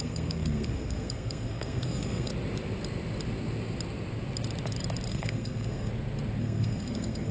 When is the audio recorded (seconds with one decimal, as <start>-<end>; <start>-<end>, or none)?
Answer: 2.3-5.1; 5.9-6.4

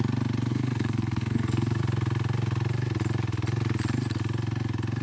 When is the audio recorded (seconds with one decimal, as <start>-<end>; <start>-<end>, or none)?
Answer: 0.0-0.5; 1.8-5.0

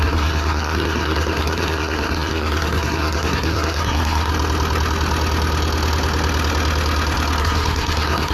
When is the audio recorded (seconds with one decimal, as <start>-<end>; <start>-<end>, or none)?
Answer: 4.3-7.4

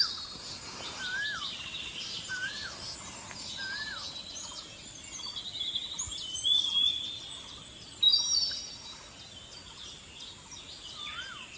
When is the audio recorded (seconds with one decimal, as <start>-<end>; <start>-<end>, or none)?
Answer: 0.0-11.6

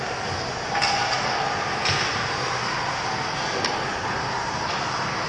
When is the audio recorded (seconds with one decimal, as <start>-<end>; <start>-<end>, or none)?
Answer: 0.0-5.3

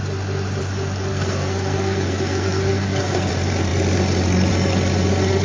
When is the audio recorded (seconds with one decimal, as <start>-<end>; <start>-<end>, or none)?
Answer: 0.0-1.1; 3.3-5.4

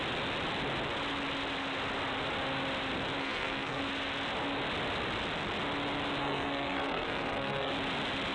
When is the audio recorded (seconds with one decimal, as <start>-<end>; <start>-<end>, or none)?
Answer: 0.0-3.2; 3.8-6.2; 7.7-8.3